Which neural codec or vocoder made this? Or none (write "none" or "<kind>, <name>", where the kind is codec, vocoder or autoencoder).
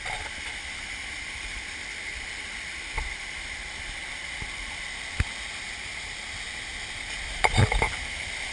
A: none